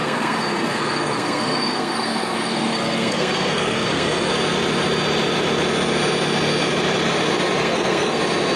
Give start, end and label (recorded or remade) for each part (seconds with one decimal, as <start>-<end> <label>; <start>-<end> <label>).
0.0-4.3 remade; 4.3-7.6 recorded; 7.6-8.2 remade; 8.2-8.6 recorded